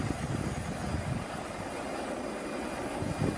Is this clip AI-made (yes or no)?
no